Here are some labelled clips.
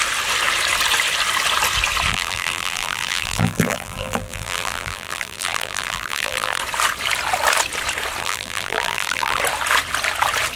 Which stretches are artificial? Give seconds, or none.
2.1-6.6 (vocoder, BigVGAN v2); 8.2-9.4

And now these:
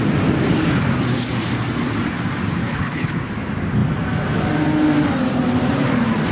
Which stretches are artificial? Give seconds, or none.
2.6-3.2 (codec, HILCodec)

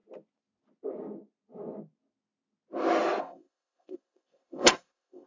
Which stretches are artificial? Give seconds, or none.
3.2-5.3 (codec, ZipCodec)

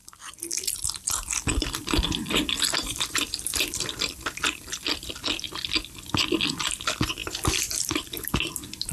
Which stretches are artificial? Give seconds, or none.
0.0-5.1 (vocoder, BigVGAN v2)

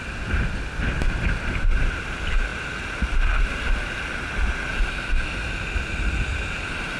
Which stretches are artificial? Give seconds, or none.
none